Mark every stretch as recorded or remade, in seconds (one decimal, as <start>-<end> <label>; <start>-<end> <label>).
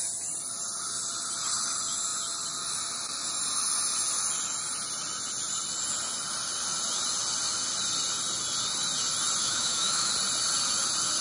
0.0-9.4 recorded; 9.4-10.1 remade; 10.1-11.2 recorded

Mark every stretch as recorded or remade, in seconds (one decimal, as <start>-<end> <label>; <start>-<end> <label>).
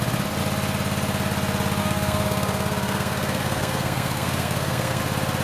0.0-1.8 recorded; 1.8-5.0 remade; 5.0-5.4 recorded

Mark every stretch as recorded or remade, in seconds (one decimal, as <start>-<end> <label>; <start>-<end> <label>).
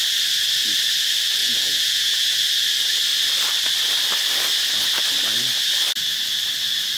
0.0-1.4 recorded; 1.4-2.4 remade; 2.4-7.0 recorded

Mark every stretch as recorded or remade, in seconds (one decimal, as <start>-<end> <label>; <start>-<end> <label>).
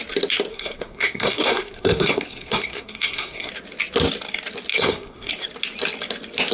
0.0-0.5 recorded; 0.5-3.5 remade; 3.5-4.7 recorded; 4.7-5.3 remade; 5.3-6.5 recorded